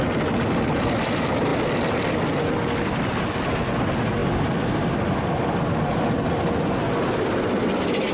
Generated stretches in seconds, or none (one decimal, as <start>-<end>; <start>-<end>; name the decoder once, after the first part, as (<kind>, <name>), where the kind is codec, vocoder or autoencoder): none

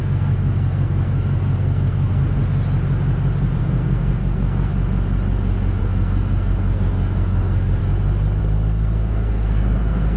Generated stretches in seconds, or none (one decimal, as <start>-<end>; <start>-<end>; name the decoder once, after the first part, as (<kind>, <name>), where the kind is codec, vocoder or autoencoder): 0.0-2.2 (codec, SNAC); 3.6-4.7; 5.8-7.8; 8.4-10.2

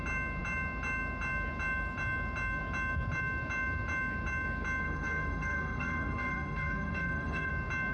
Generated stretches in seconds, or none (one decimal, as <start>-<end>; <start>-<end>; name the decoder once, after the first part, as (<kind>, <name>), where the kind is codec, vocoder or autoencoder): 4.8-7.5 (codec, SNAC)

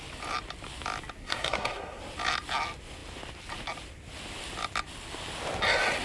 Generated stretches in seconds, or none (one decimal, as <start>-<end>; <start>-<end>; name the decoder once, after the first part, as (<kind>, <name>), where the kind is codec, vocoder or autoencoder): 1.2-2.0 (codec, SNAC)

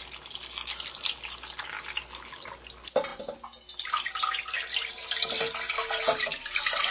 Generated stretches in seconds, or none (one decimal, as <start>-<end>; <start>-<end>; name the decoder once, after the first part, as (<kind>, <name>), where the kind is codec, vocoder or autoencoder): none

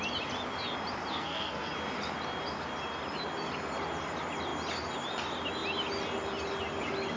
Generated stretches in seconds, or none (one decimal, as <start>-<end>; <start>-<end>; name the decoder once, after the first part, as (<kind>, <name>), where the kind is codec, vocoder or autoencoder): 1.1-1.7 (codec, SNAC)

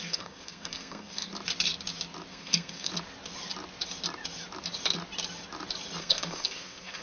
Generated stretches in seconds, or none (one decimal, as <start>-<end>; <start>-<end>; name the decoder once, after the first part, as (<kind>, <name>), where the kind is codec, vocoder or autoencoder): 0.0-1.3 (codec, SNAC); 2.3-2.9; 6.0-7.0